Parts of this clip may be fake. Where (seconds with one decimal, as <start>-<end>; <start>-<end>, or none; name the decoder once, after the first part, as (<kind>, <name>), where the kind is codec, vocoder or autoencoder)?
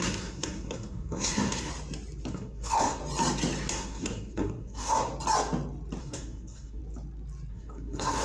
0.0-1.7 (codec, SNAC); 2.3-3.0; 3.7-5.1; 6.0-6.8; 7.5-8.2